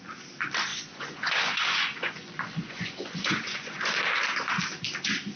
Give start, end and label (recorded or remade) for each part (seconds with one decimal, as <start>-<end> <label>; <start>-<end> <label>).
0.0-0.7 recorded; 0.7-3.9 remade; 3.9-5.4 recorded